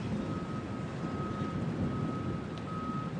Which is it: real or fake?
real